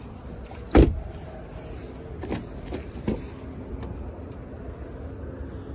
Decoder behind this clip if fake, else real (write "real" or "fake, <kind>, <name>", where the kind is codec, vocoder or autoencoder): real